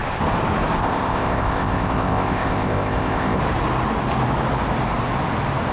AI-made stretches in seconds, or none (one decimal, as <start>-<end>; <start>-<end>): 0.8-3.4